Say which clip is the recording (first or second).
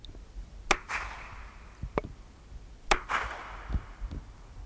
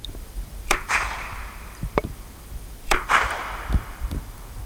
first